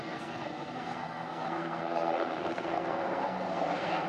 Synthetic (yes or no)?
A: yes